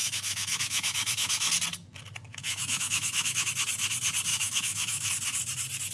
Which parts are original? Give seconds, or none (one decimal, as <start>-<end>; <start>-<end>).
1.5-2.3; 3.5-4.3; 5.1-5.9